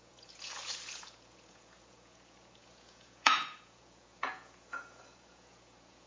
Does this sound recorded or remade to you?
remade